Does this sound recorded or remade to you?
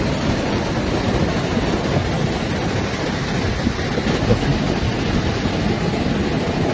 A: recorded